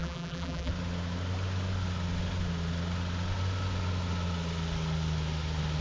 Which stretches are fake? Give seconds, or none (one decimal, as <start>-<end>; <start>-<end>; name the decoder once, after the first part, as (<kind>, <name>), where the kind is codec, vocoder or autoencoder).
0.0-0.7 (vocoder, BigVGAN v2)